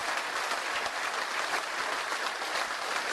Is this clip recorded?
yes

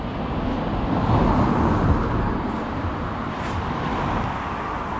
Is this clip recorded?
yes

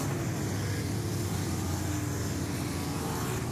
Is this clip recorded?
yes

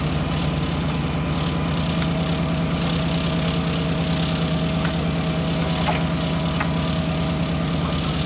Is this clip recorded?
yes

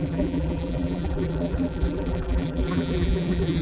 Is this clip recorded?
no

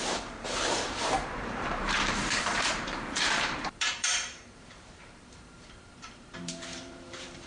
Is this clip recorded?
no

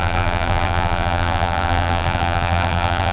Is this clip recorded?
no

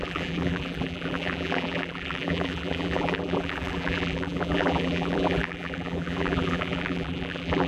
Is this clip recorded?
no